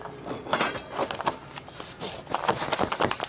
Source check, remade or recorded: recorded